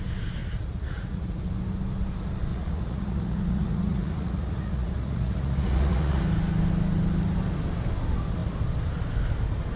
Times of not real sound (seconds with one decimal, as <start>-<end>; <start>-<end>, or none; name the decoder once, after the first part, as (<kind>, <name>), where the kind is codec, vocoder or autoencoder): 0.4-1.4 (vocoder, Vocos); 2.5-6.2